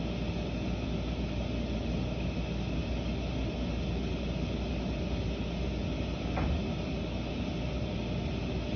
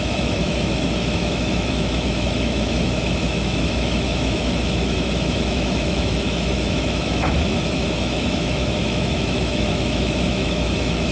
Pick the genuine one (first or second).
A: first